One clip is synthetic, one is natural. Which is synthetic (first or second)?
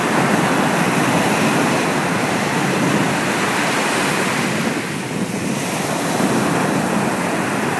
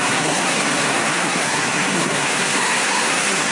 second